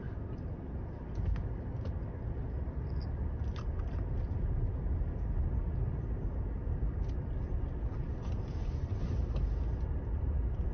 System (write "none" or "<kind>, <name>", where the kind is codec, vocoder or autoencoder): none